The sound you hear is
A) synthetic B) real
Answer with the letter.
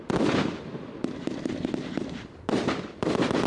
B